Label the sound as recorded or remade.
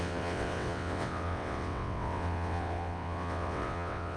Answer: remade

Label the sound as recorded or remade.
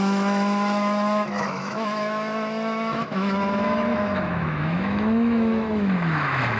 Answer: remade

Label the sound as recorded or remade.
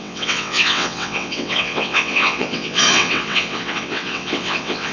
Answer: remade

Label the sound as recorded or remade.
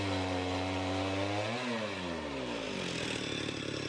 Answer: recorded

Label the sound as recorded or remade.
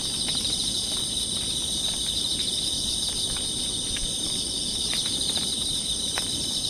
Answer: remade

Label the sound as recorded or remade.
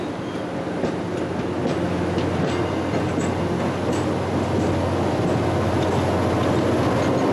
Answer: recorded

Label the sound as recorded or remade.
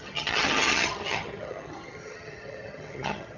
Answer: remade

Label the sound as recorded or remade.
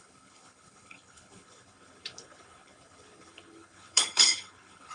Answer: remade